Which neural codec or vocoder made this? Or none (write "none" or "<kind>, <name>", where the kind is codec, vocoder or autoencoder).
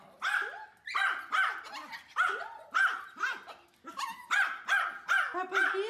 none